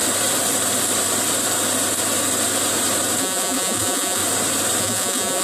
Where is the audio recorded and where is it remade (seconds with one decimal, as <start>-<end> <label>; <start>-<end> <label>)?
0.0-3.2 recorded; 3.2-4.2 remade; 4.2-4.8 recorded; 4.8-5.4 remade